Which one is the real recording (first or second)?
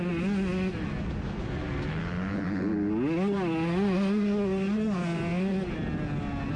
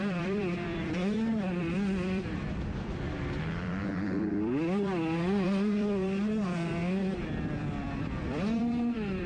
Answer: first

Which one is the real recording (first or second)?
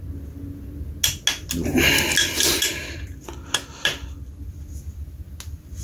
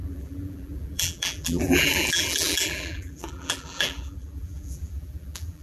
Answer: first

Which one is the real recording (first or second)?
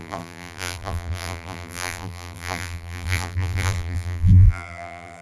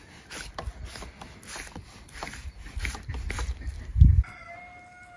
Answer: second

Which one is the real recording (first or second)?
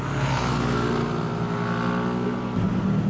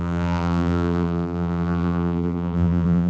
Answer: first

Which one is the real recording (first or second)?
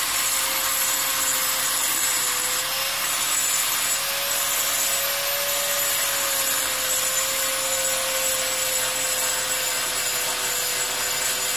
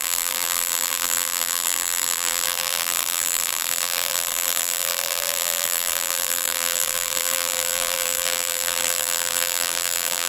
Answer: first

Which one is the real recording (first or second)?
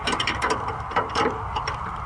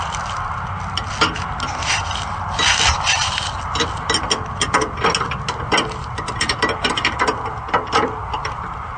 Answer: second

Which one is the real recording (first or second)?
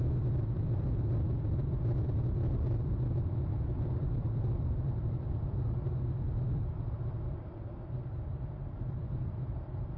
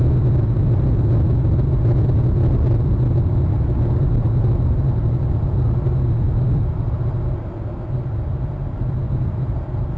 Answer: second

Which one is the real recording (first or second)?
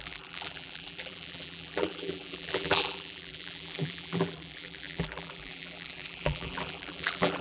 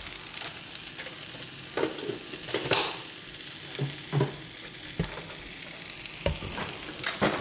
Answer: second